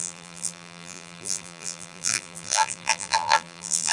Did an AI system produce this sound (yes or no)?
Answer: yes